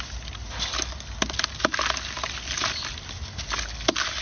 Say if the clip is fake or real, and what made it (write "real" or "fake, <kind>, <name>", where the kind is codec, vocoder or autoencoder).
real